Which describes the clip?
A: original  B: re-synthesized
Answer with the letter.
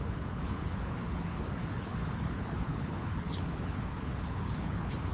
B